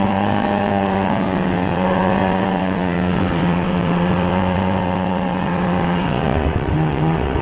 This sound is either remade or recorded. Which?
remade